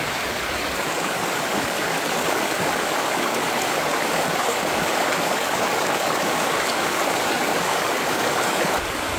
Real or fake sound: fake